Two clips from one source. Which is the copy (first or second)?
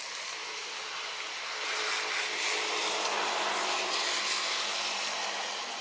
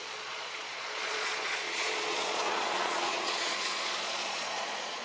second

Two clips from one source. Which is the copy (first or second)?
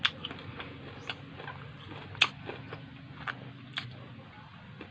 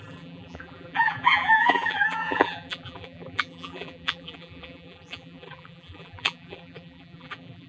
second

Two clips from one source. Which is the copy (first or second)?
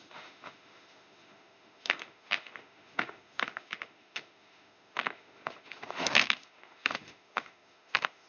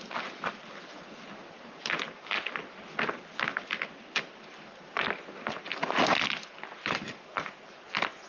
first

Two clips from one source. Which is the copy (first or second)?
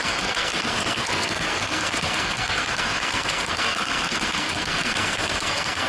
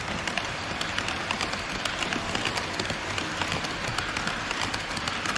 first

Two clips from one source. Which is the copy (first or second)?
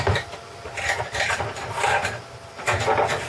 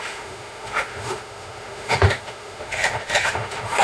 second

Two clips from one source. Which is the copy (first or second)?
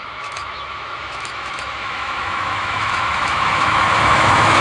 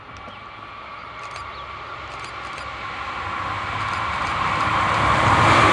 first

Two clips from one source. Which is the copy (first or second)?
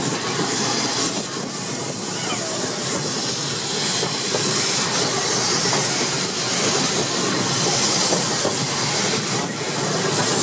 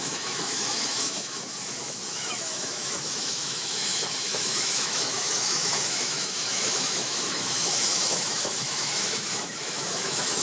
second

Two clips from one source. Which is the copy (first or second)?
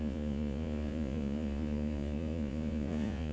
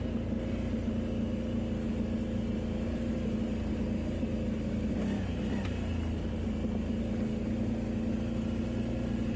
first